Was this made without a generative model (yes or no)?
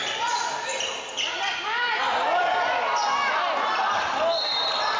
yes